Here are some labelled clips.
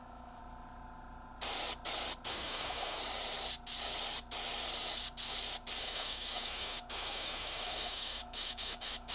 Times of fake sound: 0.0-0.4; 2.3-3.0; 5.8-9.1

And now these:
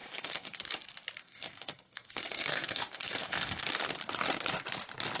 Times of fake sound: 0.0-0.6; 1.2-3.6

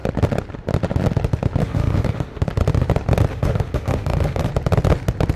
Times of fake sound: 1.6-2.4; 3.3-4.5